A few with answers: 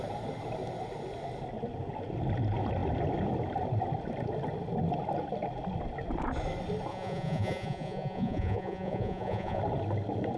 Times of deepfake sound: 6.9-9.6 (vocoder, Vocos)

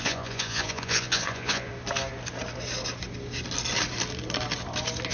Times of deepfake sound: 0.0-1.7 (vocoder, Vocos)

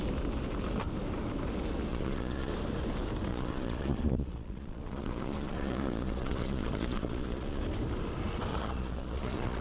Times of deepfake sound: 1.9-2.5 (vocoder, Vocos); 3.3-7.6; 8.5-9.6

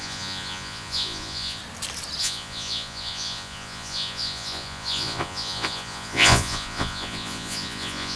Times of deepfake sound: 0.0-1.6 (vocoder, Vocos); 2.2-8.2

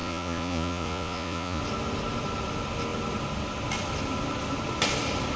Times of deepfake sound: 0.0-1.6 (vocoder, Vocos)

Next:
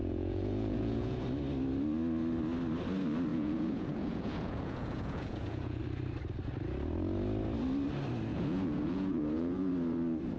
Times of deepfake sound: 0.0-1.2 (vocoder, Vocos); 3.3-5.8; 8.3-9.7